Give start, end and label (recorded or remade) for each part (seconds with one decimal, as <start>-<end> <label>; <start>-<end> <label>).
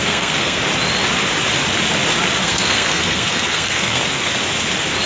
0.0-0.6 remade; 0.6-2.4 recorded; 2.4-4.0 remade; 4.0-5.1 recorded